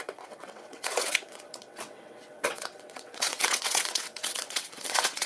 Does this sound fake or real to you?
fake